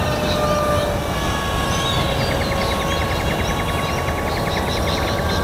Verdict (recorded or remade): recorded